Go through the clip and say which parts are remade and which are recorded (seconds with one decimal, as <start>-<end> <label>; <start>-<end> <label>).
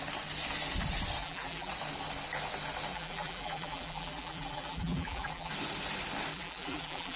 0.0-1.2 recorded; 1.2-1.7 remade; 1.7-2.9 recorded; 2.9-5.5 remade; 5.5-6.3 recorded; 6.3-7.2 remade